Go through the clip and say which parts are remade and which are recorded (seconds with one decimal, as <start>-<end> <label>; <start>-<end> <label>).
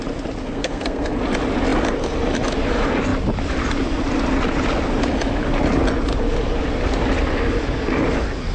0.0-0.4 recorded; 0.4-1.1 remade; 1.1-8.5 recorded